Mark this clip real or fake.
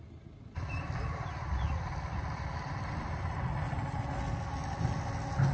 real